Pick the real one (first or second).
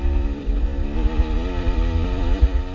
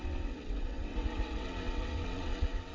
first